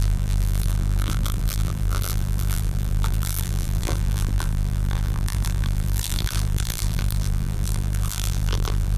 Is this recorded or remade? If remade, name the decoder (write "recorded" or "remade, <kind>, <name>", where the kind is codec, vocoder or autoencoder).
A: remade, vocoder, BigVGAN v2